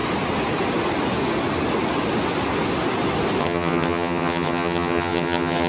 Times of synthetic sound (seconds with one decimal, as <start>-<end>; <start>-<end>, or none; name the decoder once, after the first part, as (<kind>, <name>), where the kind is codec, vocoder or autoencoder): 3.4-5.7 (vocoder, HiFi-GAN)